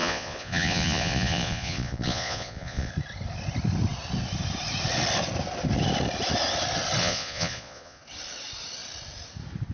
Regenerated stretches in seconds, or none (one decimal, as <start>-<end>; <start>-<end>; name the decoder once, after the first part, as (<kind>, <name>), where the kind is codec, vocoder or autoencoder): 0.0-2.9 (vocoder, Vocos); 7.0-8.0